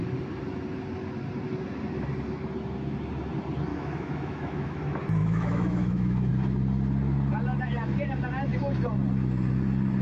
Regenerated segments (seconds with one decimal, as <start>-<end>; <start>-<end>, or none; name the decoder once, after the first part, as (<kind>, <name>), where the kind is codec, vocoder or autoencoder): 3.7-4.8 (autoencoder, DAC-VAE); 5.2-6.3